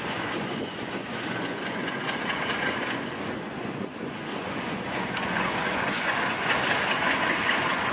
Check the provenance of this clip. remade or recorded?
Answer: remade